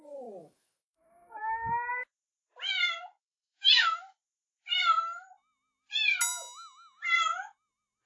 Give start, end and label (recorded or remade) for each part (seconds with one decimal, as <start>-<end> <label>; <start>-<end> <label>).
0.0-0.4 recorded; 0.4-1.9 remade; 1.9-3.1 recorded; 3.1-4.0 remade; 4.0-8.1 recorded